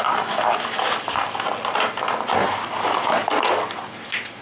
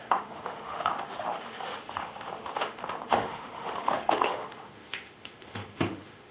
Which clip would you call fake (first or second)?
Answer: second